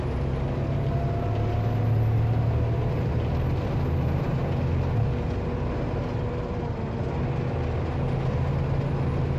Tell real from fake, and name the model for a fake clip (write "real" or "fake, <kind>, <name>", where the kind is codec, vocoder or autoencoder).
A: real